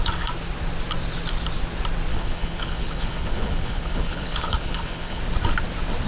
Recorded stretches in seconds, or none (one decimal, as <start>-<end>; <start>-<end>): 0.0-2.1; 5.2-6.1